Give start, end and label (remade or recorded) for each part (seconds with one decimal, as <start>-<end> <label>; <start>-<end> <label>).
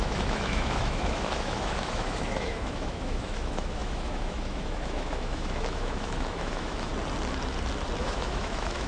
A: 0.0-6.9 remade; 6.9-8.0 recorded; 8.0-8.9 remade